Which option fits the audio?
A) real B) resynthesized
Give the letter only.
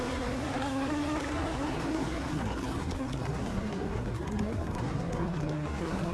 B